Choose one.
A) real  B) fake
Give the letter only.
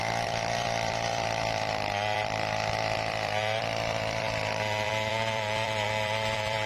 B